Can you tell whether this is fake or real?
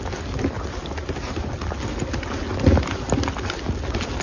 real